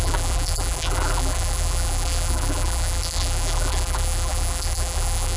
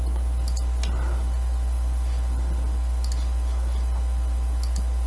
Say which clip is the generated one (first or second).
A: first